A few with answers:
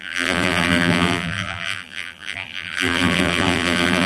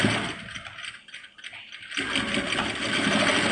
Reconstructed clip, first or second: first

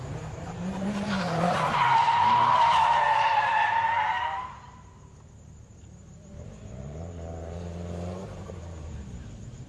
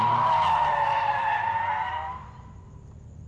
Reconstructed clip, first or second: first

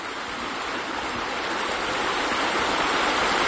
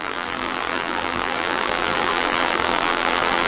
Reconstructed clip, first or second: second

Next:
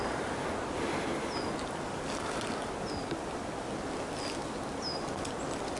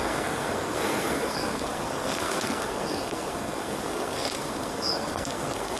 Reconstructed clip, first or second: second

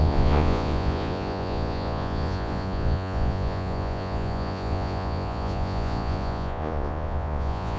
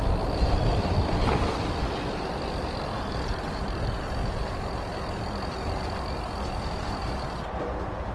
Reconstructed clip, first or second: first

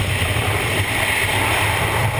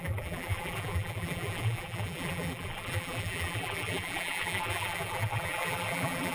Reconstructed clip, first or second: second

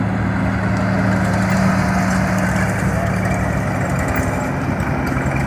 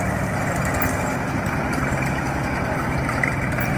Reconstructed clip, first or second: second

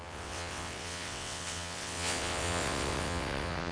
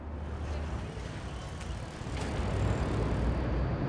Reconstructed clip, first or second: first